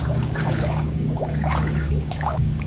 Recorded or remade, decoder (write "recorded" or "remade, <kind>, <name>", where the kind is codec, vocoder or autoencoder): remade, codec, DAC